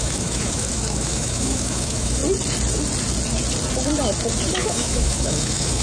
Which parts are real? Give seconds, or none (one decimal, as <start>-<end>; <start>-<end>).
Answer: 2.2-4.5